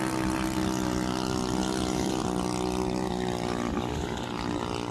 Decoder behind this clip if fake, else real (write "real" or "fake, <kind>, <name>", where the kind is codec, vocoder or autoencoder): real